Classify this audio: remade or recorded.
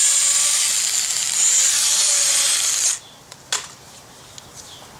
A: recorded